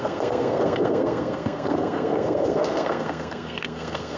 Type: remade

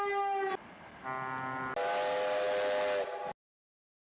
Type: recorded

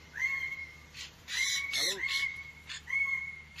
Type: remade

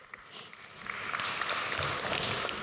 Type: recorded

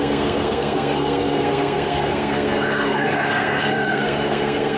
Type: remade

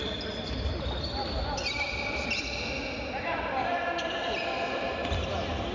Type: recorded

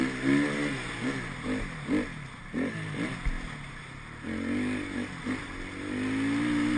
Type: recorded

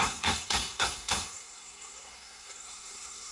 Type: remade